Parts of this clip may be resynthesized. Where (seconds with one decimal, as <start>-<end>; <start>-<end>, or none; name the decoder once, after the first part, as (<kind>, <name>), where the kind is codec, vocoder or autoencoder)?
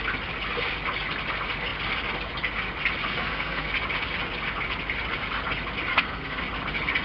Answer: 3.1-3.7 (codec, SNAC); 5.9-6.4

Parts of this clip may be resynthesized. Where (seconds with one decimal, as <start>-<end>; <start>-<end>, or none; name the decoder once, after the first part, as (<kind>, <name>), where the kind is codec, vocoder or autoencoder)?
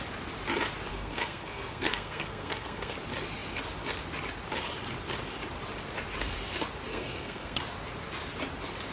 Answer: 0.9-2.9 (codec, SNAC); 6.9-7.6